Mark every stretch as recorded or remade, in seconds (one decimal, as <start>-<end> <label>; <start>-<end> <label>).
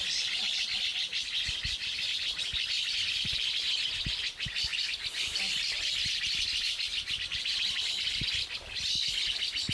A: 0.0-9.7 recorded